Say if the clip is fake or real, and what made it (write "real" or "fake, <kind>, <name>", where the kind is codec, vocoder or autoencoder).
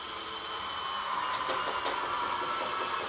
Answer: fake, vocoder, BigVGAN v2